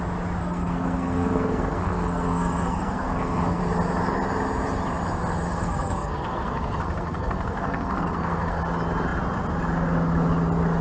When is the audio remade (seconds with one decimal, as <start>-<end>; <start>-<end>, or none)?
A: 0.4-3.6; 5.5-8.6